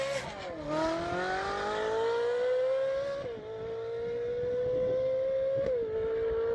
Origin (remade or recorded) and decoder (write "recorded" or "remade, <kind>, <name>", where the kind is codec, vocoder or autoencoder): recorded